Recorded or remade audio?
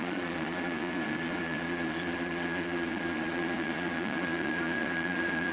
remade